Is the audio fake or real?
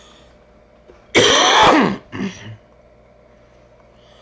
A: real